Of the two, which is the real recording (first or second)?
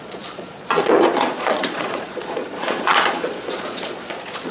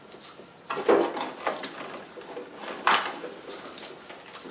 second